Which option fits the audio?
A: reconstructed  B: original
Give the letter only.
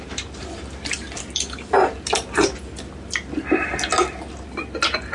B